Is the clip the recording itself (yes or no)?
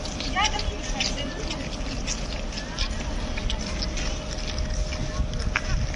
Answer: yes